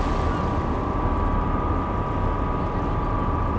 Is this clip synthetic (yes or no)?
no